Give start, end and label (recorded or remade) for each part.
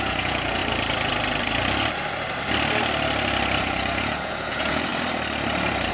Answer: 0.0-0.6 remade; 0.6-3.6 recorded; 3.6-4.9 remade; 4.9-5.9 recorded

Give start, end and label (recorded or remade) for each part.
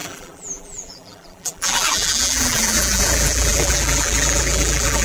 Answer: 0.0-5.0 remade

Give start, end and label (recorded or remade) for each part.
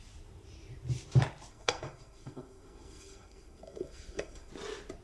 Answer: 0.0-1.5 recorded; 1.5-4.5 remade; 4.5-5.0 recorded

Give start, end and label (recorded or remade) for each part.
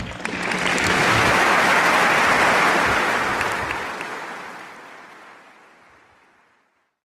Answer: 0.0-0.7 recorded; 0.7-1.8 remade; 1.8-7.1 recorded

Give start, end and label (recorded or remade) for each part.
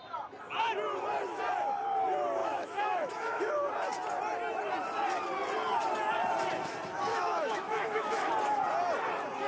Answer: 0.0-2.4 recorded; 2.4-3.4 remade; 3.4-7.1 recorded; 7.1-8.3 remade; 8.3-9.5 recorded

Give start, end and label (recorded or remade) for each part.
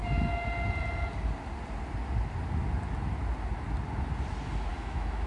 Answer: 0.0-4.7 recorded; 4.7-5.3 remade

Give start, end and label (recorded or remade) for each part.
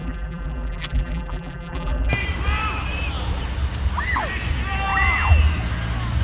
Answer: 0.0-2.1 remade; 2.1-6.2 recorded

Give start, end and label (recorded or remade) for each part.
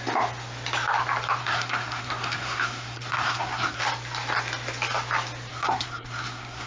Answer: 0.0-1.4 recorded; 1.4-3.8 remade; 3.8-5.5 recorded; 5.5-6.7 remade